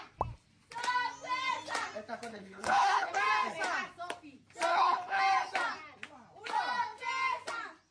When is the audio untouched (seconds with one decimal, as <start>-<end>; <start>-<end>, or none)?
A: 0.0-2.3; 3.1-4.7; 5.2-7.9